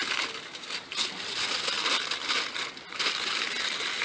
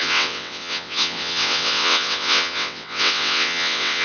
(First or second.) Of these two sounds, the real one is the first